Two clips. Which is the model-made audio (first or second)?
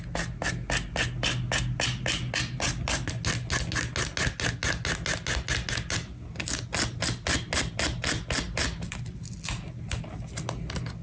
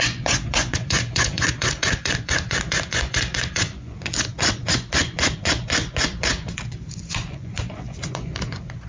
second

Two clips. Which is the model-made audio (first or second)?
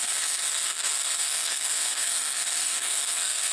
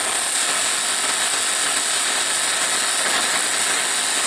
first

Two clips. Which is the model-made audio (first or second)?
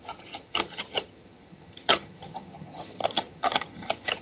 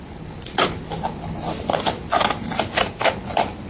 first